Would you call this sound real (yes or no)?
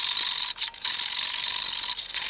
yes